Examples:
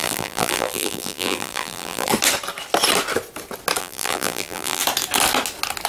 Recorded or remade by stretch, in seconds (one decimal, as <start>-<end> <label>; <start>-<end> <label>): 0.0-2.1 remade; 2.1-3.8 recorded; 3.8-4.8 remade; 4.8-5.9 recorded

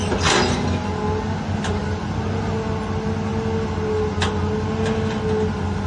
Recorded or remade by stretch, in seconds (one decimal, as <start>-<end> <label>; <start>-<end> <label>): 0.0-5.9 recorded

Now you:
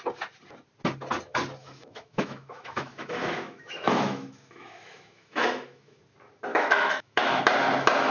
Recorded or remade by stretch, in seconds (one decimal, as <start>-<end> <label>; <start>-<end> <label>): 0.0-1.6 recorded; 1.6-6.0 remade; 6.0-6.5 recorded; 6.5-7.4 remade; 7.4-8.1 recorded